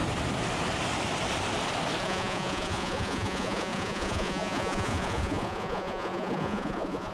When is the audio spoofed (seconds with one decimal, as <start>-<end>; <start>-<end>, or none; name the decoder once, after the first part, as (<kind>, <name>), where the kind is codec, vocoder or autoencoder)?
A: 2.0-7.1 (vocoder, Vocos)